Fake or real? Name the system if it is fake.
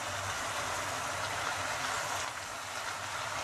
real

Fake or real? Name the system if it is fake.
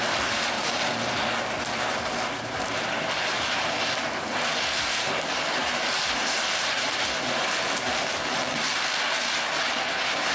fake, vocoder, BigVGAN v2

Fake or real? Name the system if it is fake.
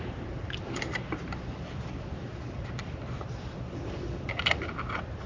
fake, vocoder, BigVGAN v2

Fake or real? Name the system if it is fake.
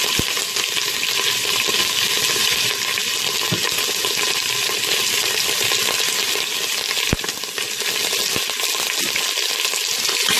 real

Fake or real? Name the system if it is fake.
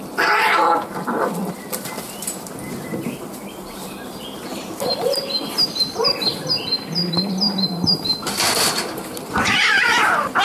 fake, vocoder, BigVGAN v2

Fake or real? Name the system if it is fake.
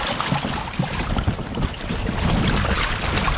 fake, vocoder, BigVGAN v2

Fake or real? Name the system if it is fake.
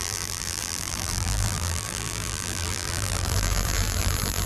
fake, vocoder, BigVGAN v2